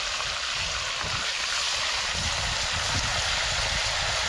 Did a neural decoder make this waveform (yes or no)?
no